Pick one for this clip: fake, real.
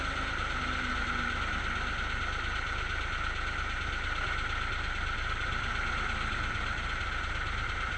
real